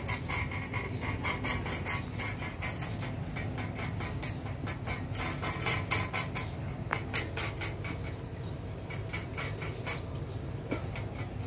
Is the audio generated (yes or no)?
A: no